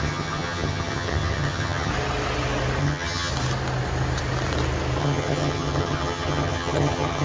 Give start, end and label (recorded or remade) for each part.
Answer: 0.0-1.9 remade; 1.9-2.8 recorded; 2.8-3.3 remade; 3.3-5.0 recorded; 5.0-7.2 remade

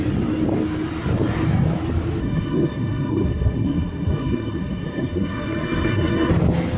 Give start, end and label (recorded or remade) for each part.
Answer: 0.0-2.2 recorded; 2.2-6.3 remade; 6.3-6.8 recorded

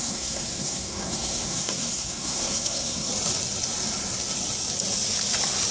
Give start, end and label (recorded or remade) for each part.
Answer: 0.0-3.1 remade; 3.1-5.7 recorded

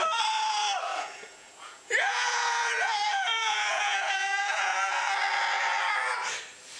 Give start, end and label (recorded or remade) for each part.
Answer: 0.0-0.9 recorded; 0.9-5.0 remade; 5.0-6.8 recorded